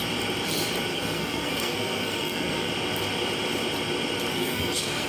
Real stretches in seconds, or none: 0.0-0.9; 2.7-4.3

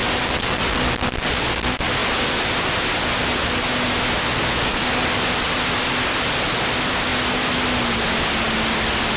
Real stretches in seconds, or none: 0.0-9.2

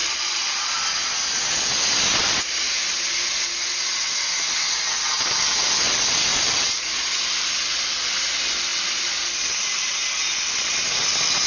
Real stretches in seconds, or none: 0.0-11.5

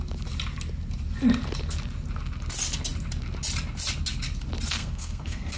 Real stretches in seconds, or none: 0.0-4.8